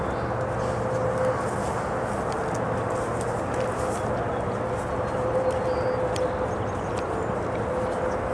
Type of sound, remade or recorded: recorded